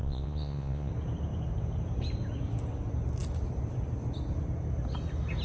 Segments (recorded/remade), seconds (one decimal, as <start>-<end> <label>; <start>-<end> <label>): 0.0-0.9 remade; 0.9-5.4 recorded